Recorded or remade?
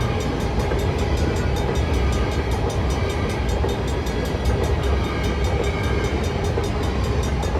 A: recorded